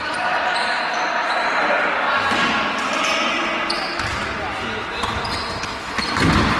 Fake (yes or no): no